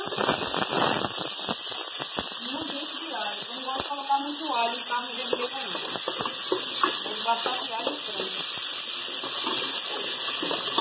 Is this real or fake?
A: real